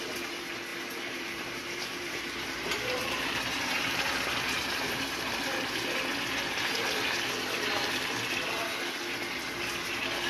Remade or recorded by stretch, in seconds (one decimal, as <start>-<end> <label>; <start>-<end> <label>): 0.0-0.7 recorded; 0.7-5.4 remade; 5.4-10.3 recorded